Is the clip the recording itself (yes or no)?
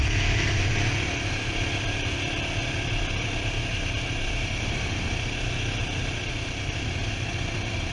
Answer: yes